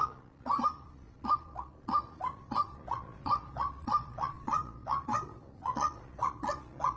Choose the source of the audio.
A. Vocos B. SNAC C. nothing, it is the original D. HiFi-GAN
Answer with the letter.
A